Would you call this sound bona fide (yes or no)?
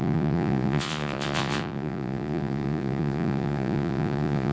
no